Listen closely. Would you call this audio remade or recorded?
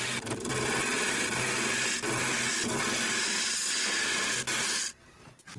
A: recorded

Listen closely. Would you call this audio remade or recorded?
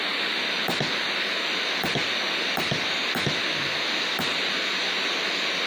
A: recorded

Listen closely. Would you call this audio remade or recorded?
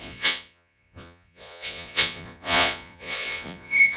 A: remade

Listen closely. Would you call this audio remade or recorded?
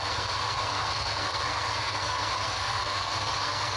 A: remade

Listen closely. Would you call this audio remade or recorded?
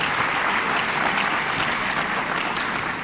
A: recorded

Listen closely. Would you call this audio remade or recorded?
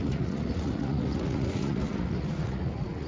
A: remade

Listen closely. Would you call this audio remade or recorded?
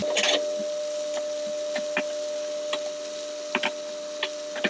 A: recorded